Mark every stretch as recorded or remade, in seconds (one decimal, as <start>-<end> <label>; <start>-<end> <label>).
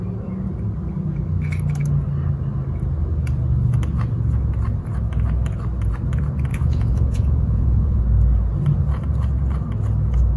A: 0.0-6.5 recorded; 6.5-8.0 remade; 8.0-10.4 recorded